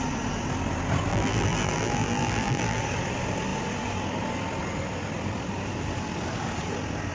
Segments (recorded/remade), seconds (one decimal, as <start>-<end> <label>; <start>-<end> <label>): 0.0-1.1 recorded; 1.1-2.8 remade; 2.8-7.1 recorded